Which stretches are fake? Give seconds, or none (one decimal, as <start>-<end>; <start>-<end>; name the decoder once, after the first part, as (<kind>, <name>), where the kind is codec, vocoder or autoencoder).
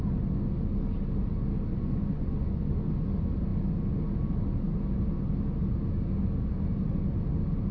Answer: 1.7-2.8 (vocoder, Vocos)